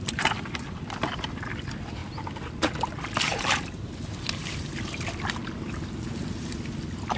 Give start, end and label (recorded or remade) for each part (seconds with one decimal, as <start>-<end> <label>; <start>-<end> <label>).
0.0-7.2 recorded